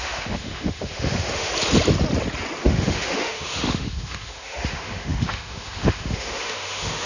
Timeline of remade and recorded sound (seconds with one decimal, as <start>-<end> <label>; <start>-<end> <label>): 0.0-1.5 remade; 1.5-2.6 recorded; 2.6-7.1 remade